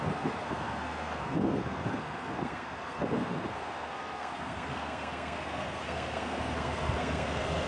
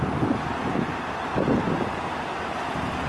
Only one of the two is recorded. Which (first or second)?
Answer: second